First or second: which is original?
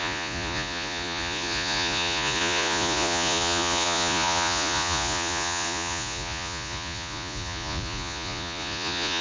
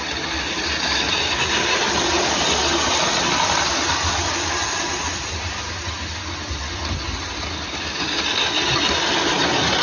second